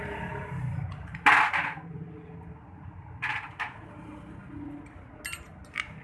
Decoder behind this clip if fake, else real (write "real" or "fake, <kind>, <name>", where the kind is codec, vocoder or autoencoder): real